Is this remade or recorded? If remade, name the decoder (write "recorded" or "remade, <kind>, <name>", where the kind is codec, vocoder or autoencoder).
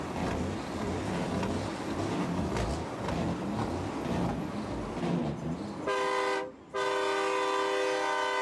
recorded